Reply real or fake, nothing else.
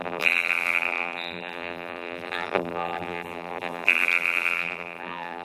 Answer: fake